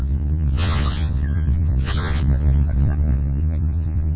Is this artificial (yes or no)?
yes